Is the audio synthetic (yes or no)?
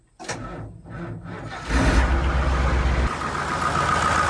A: no